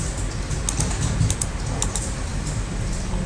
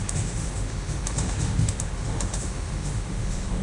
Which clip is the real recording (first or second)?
first